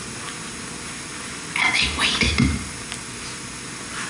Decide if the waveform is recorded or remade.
recorded